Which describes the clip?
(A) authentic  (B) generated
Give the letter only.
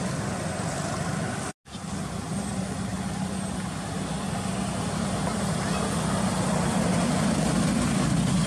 A